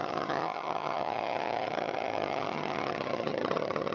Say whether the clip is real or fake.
fake